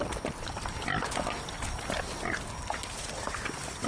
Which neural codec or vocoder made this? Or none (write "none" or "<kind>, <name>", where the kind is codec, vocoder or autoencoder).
none